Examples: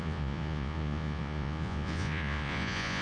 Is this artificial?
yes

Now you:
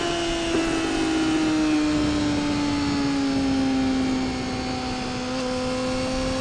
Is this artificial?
no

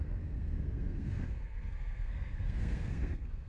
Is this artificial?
yes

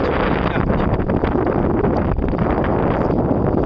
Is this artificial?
no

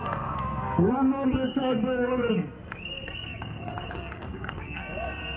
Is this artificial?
yes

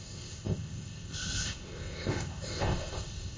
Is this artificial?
yes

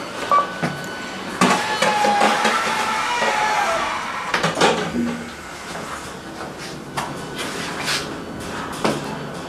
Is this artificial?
no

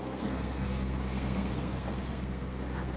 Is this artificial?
yes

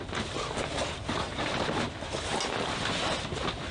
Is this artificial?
no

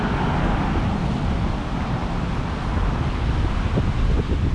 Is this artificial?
no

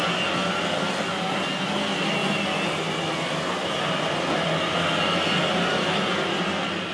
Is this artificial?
no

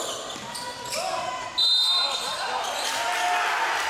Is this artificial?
no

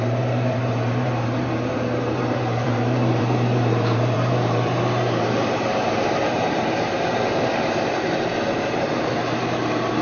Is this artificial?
yes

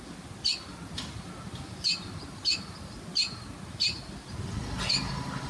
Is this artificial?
no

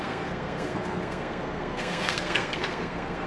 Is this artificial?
yes